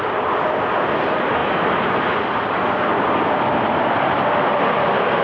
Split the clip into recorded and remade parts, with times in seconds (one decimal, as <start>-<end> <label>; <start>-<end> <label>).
0.0-5.2 recorded